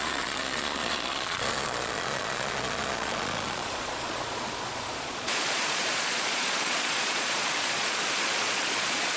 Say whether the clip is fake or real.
fake